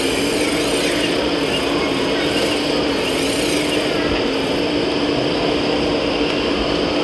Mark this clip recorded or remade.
recorded